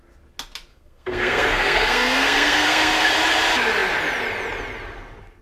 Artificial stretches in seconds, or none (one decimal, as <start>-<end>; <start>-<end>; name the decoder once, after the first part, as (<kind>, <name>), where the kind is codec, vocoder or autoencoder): 0.7-3.1 (codec, SNAC)